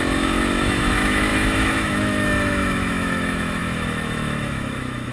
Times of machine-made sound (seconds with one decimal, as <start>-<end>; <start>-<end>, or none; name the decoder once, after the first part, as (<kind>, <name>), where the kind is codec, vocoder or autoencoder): 0.0-5.1 (autoencoder, DAC-VAE)